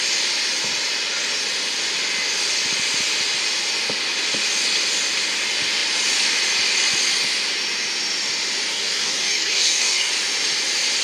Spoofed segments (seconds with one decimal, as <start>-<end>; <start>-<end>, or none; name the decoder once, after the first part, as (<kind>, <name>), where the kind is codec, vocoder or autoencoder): 8.7-10.1 (codec, DAC)